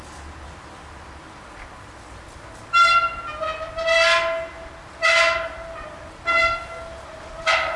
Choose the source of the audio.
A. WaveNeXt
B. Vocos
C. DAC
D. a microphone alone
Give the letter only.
D